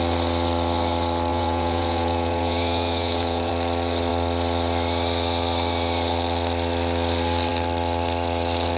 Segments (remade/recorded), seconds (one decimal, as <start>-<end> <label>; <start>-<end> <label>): 0.0-1.3 recorded; 1.3-3.5 remade; 3.5-8.8 recorded